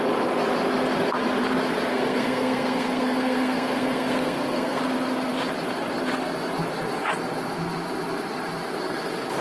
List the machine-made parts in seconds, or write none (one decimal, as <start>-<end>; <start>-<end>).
1.9-4.8